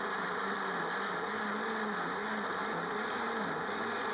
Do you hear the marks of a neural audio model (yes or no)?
no